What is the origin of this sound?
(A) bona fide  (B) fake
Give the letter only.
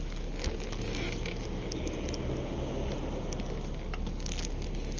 A